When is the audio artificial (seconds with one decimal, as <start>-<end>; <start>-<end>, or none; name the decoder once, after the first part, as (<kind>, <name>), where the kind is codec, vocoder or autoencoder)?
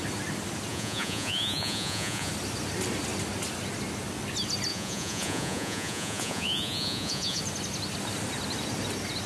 0.7-2.3 (vocoder, Vocos); 4.7-7.4